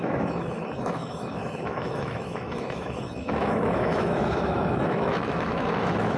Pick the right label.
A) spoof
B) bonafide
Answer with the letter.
A